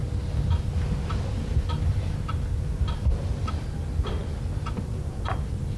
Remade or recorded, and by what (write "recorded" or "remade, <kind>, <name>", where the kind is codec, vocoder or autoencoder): recorded